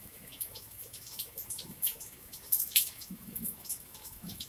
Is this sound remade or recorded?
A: remade